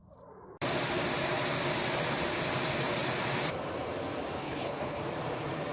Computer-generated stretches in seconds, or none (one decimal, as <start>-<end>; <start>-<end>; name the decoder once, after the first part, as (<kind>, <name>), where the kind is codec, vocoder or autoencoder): 4.4-5.0 (codec, HILCodec)

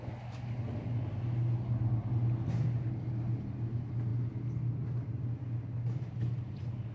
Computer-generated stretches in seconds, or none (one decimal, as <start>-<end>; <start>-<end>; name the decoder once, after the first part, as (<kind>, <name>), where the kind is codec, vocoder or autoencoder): none